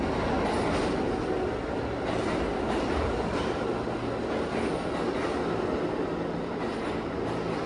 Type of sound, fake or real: real